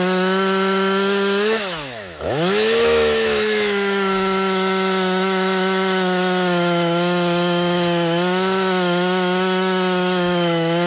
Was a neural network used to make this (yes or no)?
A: yes